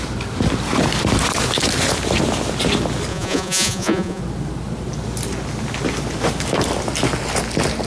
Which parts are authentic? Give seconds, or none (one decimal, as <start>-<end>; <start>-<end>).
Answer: 0.0-3.1; 4.2-7.9